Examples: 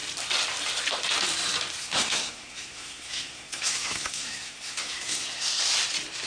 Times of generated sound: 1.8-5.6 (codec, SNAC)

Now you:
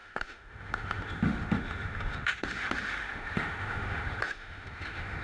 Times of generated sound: 0.0-5.2 (autoencoder, DAC-VAE)

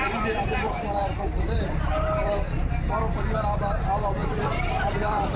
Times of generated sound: 1.0-2.5 (vocoder, BigVGAN v2); 4.2-5.4

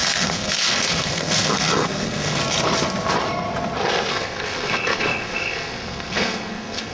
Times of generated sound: 0.0-2.4 (codec, SNAC); 4.1-6.9

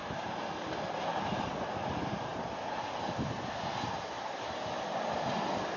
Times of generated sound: 0.0-1.2 (vocoder, BigVGAN v2)